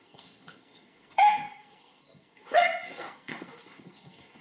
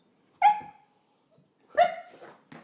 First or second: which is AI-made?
first